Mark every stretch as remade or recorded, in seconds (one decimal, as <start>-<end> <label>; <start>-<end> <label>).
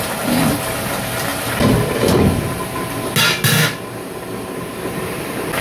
0.0-5.6 recorded